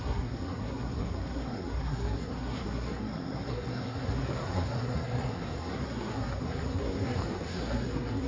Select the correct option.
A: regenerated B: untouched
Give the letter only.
A